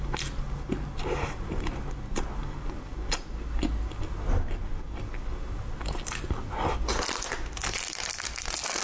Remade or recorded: recorded